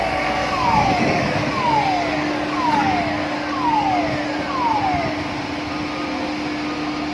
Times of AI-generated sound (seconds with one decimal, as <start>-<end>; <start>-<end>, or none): 0.0-4.0